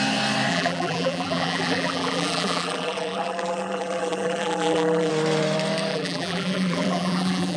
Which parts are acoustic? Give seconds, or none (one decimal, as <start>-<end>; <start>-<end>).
0.0-0.5; 5.1-5.9